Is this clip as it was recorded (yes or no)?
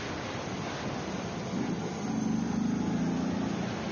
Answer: yes